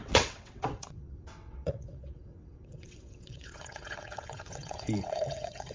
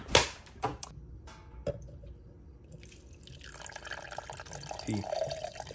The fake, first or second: first